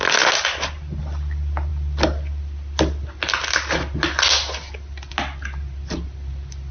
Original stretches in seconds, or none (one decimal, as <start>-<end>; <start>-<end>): 0.0-6.7